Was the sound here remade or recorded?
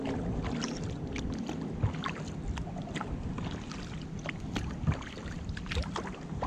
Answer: recorded